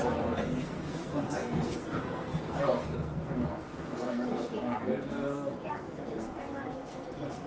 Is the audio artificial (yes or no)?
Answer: yes